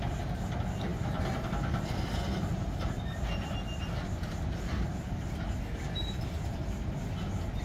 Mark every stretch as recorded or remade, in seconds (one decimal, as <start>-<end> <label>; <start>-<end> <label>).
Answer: 0.0-7.6 recorded